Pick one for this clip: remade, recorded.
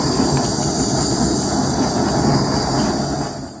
recorded